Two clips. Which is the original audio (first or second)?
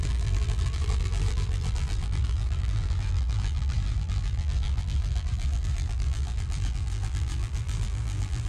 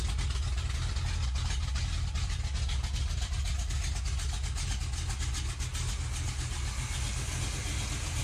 second